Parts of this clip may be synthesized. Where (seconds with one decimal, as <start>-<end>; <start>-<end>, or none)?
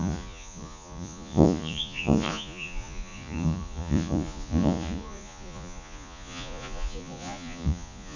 0.0-8.2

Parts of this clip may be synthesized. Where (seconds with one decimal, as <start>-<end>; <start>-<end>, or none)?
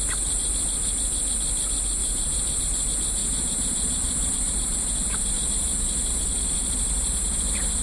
2.0-2.6; 3.2-6.9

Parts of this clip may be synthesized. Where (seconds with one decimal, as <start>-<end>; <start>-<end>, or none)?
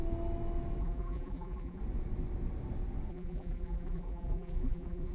0.8-1.8; 3.1-5.1